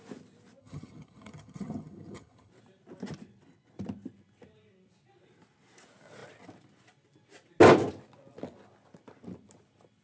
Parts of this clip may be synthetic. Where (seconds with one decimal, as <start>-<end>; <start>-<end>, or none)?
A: 0.6-2.5